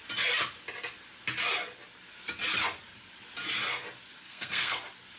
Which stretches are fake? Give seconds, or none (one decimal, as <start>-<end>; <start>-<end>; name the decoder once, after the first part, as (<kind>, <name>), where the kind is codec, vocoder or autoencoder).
4.2-4.8 (codec, SNAC)